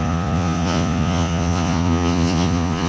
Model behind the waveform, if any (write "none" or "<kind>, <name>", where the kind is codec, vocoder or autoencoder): vocoder, Vocos